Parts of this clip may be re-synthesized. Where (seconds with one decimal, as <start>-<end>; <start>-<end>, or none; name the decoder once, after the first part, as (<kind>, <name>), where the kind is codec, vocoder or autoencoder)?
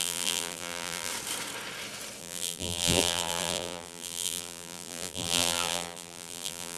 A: 0.0-1.1 (vocoder, BigVGAN v2); 2.2-6.8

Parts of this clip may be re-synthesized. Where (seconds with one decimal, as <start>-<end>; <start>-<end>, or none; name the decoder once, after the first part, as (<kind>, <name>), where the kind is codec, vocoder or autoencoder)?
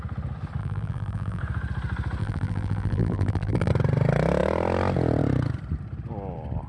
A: 0.6-1.4 (vocoder, BigVGAN v2); 2.2-3.7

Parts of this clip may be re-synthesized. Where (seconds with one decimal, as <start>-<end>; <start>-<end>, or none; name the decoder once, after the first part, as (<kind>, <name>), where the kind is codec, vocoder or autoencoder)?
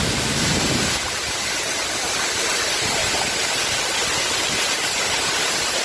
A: 0.5-1.9 (vocoder, BigVGAN v2)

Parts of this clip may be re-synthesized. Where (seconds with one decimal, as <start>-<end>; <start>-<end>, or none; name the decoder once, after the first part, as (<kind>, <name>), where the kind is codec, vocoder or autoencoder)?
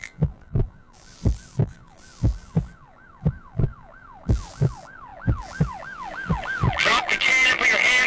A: 0.0-8.1 (vocoder, BigVGAN v2)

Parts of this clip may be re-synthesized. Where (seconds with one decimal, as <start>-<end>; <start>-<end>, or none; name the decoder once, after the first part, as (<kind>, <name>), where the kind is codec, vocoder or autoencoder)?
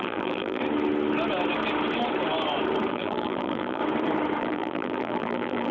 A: 0.0-0.6 (vocoder, BigVGAN v2); 2.9-3.8; 4.4-5.7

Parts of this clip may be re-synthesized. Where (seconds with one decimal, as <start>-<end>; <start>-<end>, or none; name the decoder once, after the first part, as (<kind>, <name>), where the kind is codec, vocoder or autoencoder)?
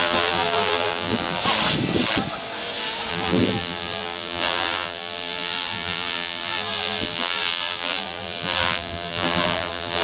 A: 0.0-1.4 (vocoder, BigVGAN v2); 3.1-10.0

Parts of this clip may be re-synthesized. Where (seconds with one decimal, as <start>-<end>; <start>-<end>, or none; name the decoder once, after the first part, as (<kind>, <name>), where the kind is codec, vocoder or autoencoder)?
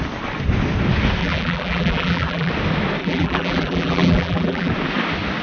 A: 1.2-2.5 (vocoder, BigVGAN v2); 3.0-4.7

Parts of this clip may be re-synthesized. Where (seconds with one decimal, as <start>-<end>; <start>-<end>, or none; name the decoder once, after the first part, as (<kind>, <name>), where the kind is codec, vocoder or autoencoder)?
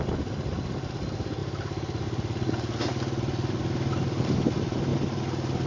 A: 0.0-5.7 (vocoder, BigVGAN v2)